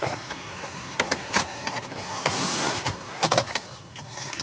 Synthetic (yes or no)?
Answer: yes